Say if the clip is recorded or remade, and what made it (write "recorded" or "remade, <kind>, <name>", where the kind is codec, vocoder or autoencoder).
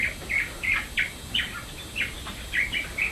recorded